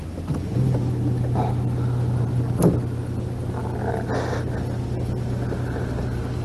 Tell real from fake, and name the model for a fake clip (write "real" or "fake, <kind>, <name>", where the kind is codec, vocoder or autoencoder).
real